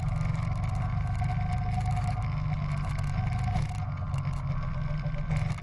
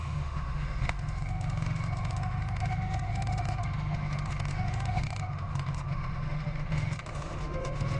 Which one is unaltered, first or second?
first